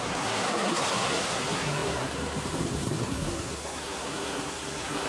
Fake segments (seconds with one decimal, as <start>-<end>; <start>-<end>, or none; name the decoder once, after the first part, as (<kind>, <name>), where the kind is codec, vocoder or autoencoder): 0.0-5.1 (codec, SNAC)